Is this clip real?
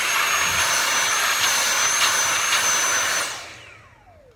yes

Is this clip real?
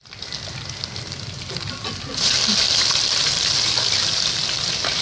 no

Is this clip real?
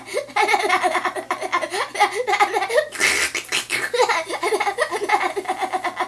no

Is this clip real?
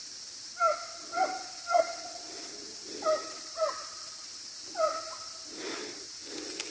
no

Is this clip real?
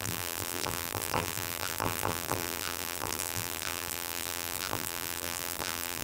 no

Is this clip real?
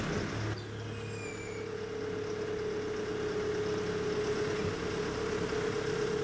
yes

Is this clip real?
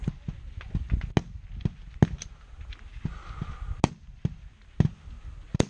yes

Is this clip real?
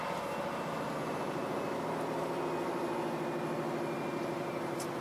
yes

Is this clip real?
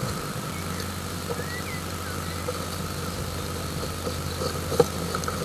yes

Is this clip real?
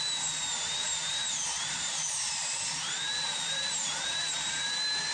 no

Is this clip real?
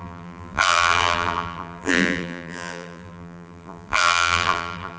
no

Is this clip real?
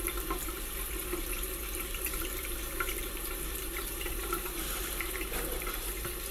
no